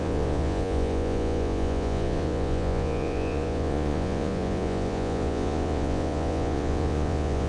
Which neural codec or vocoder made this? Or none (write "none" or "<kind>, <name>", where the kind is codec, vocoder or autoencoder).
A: vocoder, Vocos